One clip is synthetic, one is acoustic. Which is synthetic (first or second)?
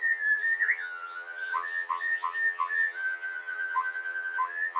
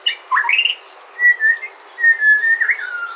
first